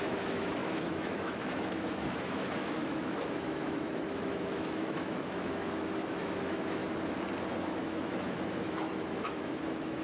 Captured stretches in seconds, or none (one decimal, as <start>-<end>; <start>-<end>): 6.8-7.5